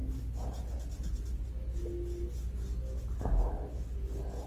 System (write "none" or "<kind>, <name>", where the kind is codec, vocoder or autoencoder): none